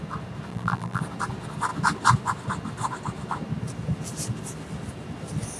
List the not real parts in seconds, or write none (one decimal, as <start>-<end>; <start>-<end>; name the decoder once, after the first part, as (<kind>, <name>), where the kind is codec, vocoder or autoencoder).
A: 0.5-1.0 (vocoder, BigVGAN v2)